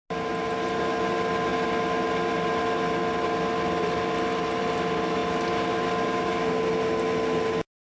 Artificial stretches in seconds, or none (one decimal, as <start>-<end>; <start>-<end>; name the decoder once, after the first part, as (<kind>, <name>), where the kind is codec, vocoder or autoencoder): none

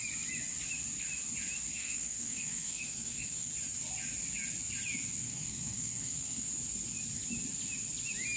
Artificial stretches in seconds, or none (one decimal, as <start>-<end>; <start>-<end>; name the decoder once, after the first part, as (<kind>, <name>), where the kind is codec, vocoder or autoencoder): 1.7-3.5 (codec, SNAC); 5.2-6.5

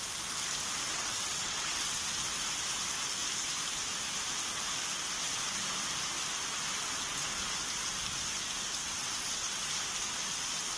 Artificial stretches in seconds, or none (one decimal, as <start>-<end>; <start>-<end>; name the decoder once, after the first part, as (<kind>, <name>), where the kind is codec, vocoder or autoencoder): 0.9-2.0 (vocoder, WaveNeXt); 8.8-9.6

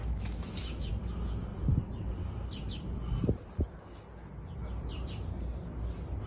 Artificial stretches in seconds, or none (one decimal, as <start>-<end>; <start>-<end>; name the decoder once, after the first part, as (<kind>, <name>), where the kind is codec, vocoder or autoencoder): 0.0-0.9 (autoencoder, DAC-VAE)

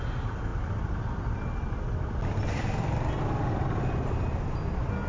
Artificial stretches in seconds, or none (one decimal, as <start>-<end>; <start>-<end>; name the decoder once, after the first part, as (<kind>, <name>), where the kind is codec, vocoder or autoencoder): none

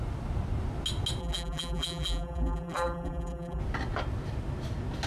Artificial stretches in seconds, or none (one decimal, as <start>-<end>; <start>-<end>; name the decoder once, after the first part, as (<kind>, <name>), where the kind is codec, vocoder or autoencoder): 1.2-3.6 (vocoder, BigVGAN v2)

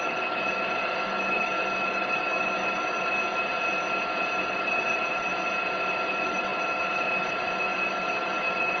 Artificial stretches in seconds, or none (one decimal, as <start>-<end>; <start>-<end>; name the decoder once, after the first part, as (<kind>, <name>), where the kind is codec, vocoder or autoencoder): 0.0-3.2 (autoencoder, DAC-VAE); 4.5-5.3; 6.1-8.8